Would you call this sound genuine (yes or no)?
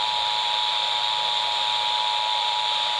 no